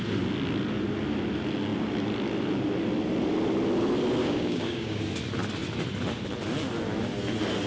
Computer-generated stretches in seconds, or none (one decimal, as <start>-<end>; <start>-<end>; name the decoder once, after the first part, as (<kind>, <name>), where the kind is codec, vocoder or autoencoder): 4.2-5.0 (codec, DAC)